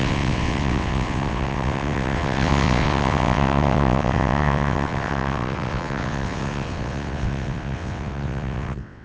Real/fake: fake